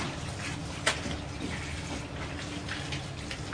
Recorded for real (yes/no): yes